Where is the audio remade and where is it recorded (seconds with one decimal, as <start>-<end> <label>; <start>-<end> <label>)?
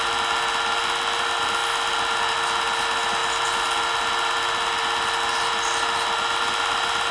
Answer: 0.0-7.1 recorded